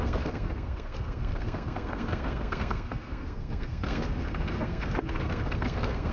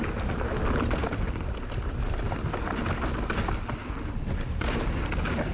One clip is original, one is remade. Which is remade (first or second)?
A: first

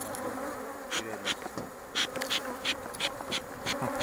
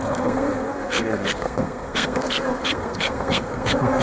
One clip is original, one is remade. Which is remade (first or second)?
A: second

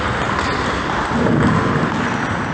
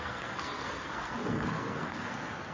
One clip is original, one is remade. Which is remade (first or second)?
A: second